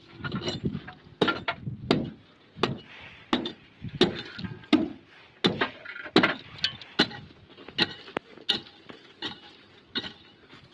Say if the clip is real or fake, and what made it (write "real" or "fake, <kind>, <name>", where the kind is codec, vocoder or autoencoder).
real